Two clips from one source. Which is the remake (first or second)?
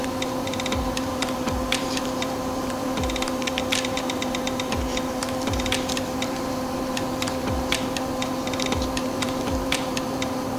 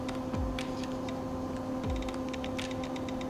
first